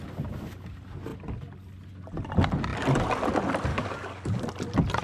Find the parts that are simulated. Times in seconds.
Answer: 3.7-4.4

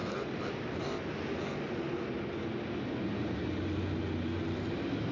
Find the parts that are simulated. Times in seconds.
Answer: none

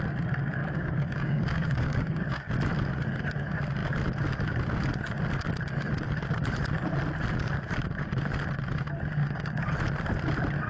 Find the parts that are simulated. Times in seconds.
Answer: 0.6-2.5; 9.2-9.7

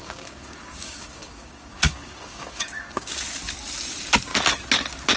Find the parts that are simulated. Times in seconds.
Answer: 0.0-3.1